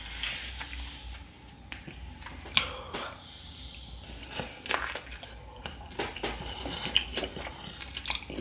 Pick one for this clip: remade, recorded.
recorded